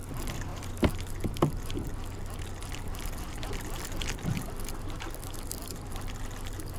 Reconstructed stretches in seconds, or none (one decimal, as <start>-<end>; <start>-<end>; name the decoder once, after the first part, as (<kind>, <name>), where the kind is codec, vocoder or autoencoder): none